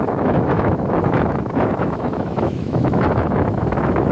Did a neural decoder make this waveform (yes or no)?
yes